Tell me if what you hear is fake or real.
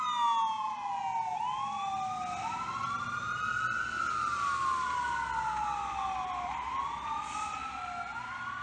real